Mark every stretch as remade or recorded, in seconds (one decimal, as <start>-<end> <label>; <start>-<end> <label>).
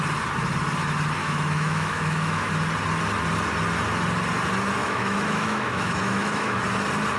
0.0-1.2 recorded; 1.2-2.5 remade; 2.5-4.8 recorded; 4.8-6.6 remade; 6.6-7.2 recorded